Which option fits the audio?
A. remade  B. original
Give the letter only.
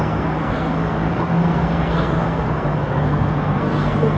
A